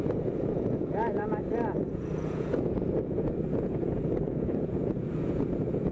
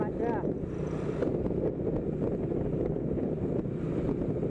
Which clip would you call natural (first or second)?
second